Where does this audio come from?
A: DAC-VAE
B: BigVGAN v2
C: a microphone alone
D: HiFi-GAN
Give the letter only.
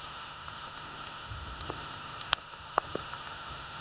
A